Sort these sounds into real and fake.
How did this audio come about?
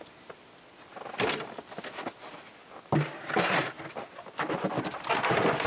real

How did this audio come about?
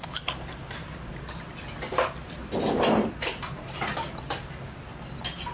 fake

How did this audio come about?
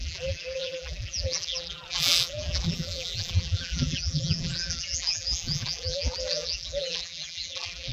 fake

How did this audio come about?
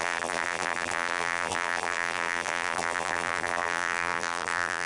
fake